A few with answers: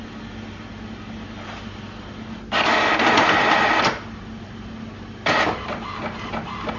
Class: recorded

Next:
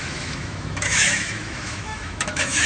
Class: remade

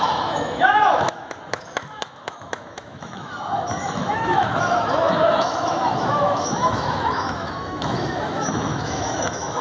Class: remade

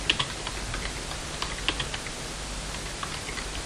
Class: recorded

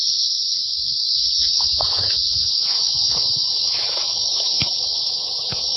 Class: remade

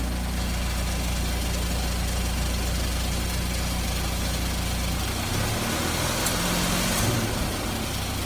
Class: recorded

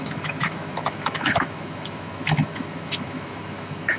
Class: remade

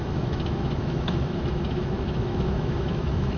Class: remade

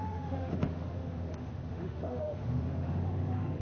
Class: remade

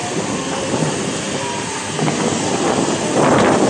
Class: recorded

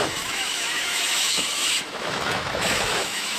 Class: remade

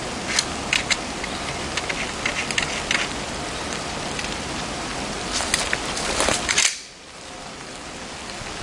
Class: recorded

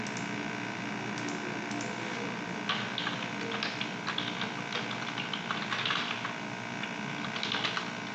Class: recorded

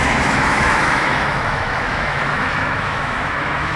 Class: remade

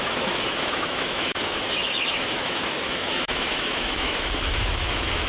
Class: remade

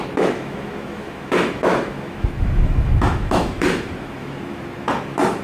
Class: remade